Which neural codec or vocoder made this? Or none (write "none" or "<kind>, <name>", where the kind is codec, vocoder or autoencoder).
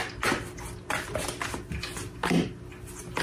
none